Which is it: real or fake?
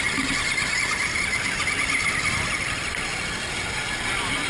fake